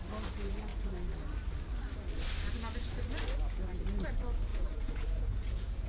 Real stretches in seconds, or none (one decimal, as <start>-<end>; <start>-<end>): 0.0-4.5